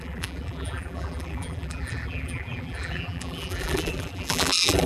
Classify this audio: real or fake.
fake